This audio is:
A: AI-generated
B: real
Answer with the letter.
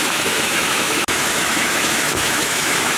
A